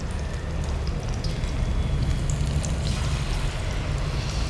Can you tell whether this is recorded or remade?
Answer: recorded